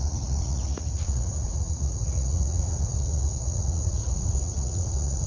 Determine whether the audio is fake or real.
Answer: fake